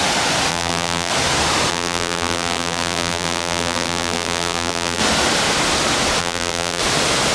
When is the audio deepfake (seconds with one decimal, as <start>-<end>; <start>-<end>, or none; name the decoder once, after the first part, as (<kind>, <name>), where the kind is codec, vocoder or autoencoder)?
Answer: 0.5-1.1 (vocoder, BigVGAN v2); 1.7-5.0; 6.2-6.8

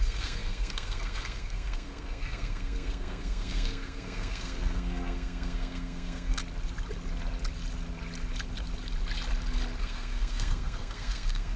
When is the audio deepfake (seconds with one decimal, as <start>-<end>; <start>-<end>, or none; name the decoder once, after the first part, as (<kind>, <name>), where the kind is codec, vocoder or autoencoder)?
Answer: 0.0-6.4 (codec, SNAC); 9.8-11.6

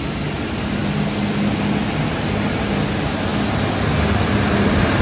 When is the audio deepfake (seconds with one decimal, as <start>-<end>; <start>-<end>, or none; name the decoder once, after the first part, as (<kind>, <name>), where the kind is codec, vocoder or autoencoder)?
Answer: none

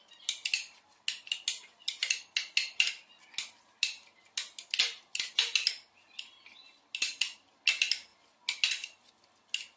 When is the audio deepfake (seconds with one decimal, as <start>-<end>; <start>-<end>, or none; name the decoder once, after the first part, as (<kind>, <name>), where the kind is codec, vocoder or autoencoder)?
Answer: none

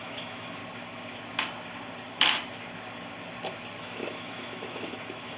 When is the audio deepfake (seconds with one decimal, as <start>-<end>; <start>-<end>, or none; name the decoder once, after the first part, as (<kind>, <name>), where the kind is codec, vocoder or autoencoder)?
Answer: 0.0-0.6 (autoencoder, DAC-VAE); 3.8-5.4

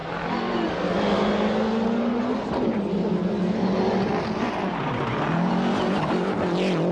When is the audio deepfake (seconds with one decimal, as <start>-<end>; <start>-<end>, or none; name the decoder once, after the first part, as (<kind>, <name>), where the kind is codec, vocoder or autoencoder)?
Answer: none

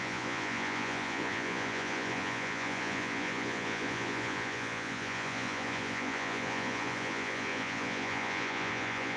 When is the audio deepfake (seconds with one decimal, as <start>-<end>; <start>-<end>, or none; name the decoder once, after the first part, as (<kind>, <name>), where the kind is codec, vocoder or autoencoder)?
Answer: 0.0-9.2 (vocoder, Vocos)